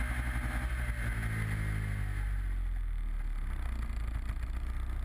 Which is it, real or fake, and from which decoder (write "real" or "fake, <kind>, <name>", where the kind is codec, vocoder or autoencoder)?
real